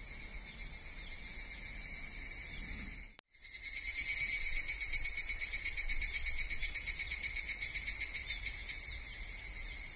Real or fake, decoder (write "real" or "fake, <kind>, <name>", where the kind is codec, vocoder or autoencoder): real